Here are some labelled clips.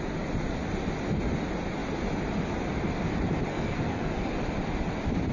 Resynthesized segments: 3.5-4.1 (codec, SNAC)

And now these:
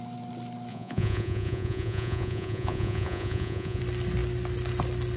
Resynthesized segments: 0.7-3.8 (vocoder, Vocos)

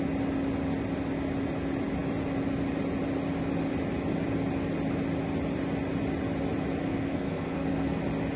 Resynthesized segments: 6.8-8.0 (codec, SNAC)

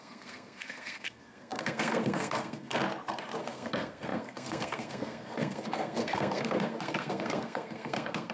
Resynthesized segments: 0.0-2.8 (codec, SNAC); 3.4-8.3